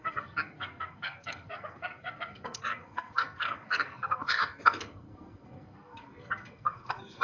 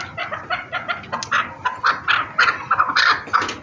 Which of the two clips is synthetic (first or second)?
first